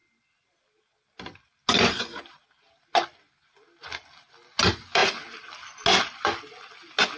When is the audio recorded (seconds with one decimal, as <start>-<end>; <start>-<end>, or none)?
0.0-7.2